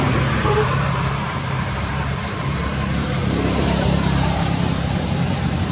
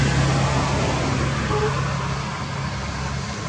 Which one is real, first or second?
second